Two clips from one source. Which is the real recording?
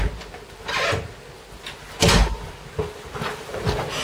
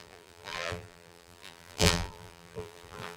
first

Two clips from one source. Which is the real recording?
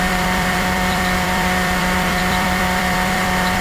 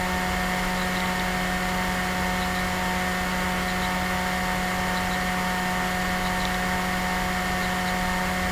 second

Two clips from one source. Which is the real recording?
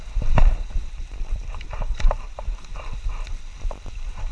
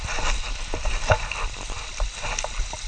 second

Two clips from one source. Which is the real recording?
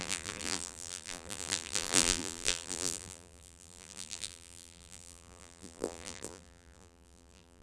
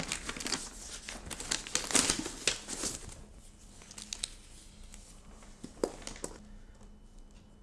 second